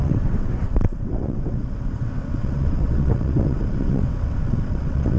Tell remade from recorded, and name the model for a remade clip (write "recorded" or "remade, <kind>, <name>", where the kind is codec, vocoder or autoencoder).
remade, vocoder, WaveNeXt